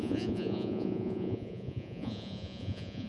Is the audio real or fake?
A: fake